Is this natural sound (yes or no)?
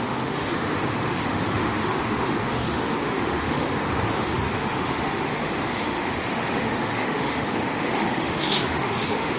no